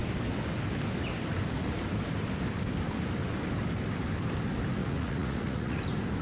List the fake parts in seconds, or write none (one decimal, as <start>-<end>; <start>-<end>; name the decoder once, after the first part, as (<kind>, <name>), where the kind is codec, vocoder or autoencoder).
4.8-5.8 (vocoder, Vocos)